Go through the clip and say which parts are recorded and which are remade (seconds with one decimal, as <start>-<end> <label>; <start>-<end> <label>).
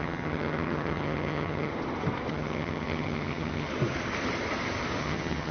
0.0-1.7 remade; 1.7-2.3 recorded; 2.3-3.7 remade; 3.7-5.0 recorded; 5.0-5.5 remade